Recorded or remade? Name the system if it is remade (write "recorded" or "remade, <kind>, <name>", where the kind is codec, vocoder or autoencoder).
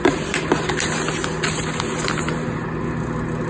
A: recorded